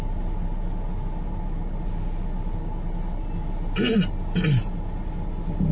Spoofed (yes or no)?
no